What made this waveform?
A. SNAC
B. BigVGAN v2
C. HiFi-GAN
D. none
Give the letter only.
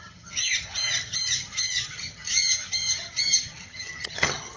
C